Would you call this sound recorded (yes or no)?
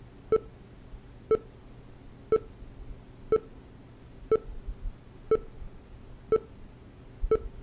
yes